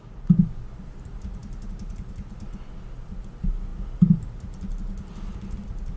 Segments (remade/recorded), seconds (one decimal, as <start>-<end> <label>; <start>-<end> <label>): 0.0-6.0 recorded